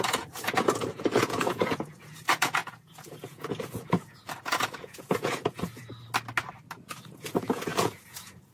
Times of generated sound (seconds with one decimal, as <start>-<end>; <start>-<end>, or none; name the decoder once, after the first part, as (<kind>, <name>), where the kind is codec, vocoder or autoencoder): 0.0-5.9 (vocoder, Vocos); 6.8-8.5